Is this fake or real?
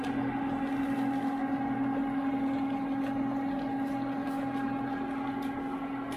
real